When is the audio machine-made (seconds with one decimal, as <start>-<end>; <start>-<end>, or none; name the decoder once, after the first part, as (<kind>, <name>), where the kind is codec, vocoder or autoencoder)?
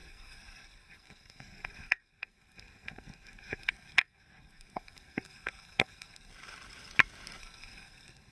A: 0.0-6.3 (codec, SNAC); 7.4-8.3